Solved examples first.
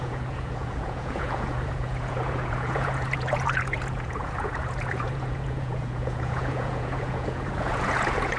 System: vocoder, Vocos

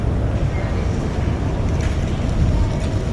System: none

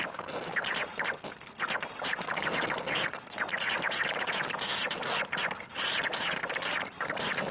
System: none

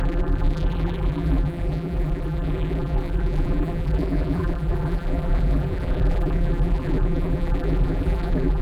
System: vocoder, BigVGAN v2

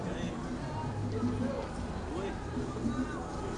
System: none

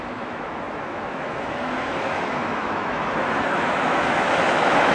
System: autoencoder, DAC-VAE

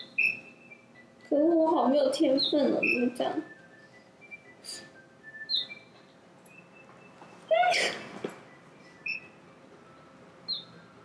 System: none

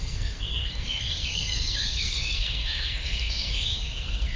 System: codec, SNAC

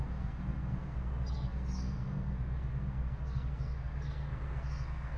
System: codec, SNAC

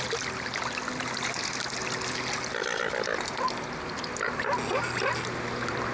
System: none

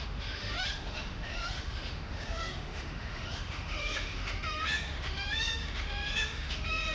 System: autoencoder, DAC-VAE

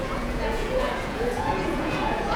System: vocoder, Vocos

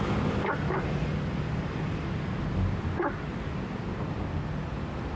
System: none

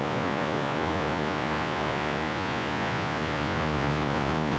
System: vocoder, Vocos